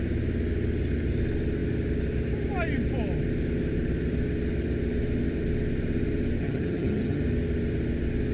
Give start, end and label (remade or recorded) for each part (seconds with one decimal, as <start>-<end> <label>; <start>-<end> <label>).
0.0-6.4 recorded; 6.4-7.2 remade; 7.2-8.3 recorded